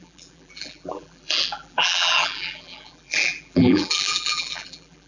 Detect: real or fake fake